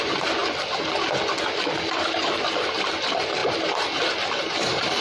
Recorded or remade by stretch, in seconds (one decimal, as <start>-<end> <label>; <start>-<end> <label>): 0.0-5.0 recorded